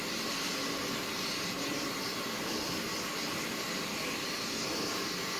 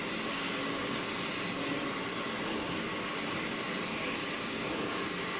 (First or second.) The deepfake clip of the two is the first